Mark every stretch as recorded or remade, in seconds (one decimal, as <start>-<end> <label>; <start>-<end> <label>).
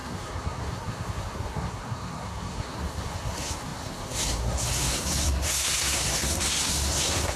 0.0-7.4 remade